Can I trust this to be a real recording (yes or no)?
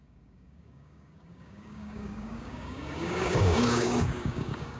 no